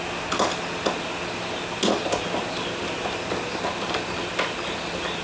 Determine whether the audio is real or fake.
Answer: real